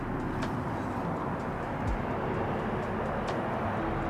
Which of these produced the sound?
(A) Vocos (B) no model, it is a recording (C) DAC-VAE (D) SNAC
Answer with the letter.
B